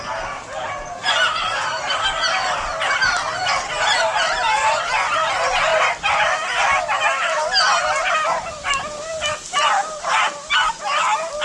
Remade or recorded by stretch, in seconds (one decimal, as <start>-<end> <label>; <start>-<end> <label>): 0.0-11.4 recorded